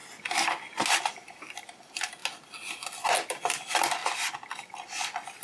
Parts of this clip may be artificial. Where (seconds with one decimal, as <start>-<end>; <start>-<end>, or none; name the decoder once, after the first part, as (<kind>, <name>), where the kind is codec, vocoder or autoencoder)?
0.9-2.2 (vocoder, BigVGAN v2); 3.3-4.0; 4.6-5.4